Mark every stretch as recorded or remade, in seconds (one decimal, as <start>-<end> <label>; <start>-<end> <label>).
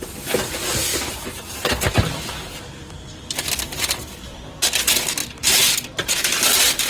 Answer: 0.0-5.2 recorded; 5.2-6.4 remade; 6.4-6.9 recorded